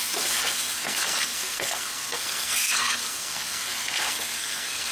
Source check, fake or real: fake